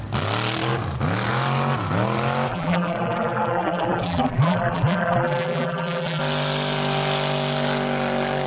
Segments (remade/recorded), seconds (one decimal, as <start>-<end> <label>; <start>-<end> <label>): 0.0-2.5 recorded; 2.5-6.2 remade; 6.2-8.5 recorded